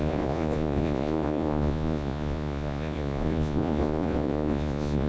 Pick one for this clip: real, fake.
fake